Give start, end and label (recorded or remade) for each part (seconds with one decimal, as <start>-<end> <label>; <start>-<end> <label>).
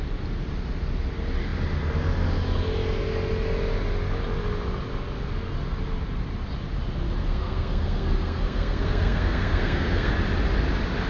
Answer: 0.0-7.2 recorded; 7.2-10.1 remade; 10.1-11.1 recorded